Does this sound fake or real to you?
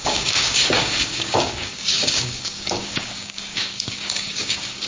fake